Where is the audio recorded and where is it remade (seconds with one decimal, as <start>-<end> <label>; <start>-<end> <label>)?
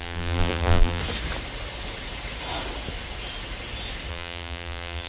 0.0-1.0 remade; 1.0-4.1 recorded; 4.1-5.1 remade